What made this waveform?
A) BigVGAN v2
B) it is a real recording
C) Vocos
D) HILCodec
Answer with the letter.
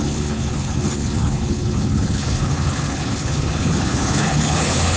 D